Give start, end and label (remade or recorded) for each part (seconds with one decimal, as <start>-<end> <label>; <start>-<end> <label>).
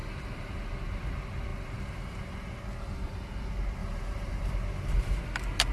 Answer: 0.0-0.6 remade; 0.6-1.5 recorded; 1.5-2.6 remade; 2.6-3.8 recorded; 3.8-5.1 remade; 5.1-5.7 recorded